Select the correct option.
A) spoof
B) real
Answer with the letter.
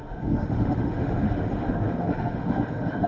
A